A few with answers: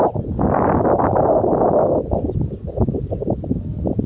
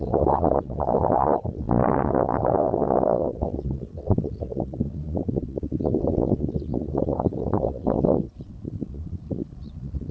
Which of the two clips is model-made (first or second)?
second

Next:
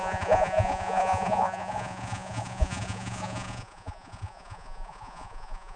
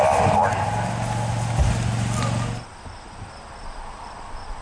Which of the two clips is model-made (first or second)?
first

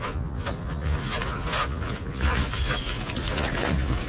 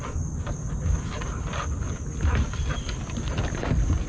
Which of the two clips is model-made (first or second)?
first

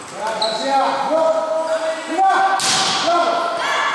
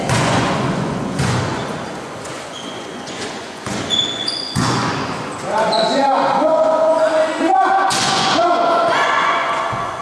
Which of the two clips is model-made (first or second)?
second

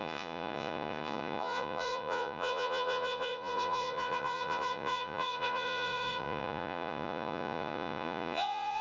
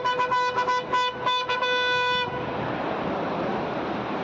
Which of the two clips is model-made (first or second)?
first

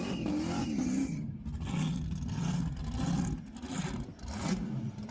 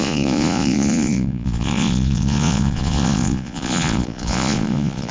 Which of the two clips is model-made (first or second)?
second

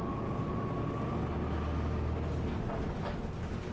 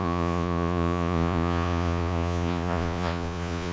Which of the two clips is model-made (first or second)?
second